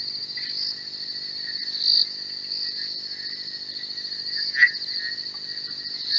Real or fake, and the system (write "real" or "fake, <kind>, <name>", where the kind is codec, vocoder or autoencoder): real